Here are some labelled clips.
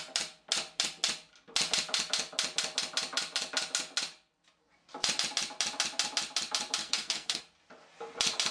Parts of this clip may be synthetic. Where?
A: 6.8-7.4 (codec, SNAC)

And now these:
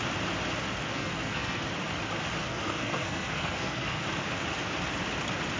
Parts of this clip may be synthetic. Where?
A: 0.9-1.6 (codec, SNAC); 2.4-4.0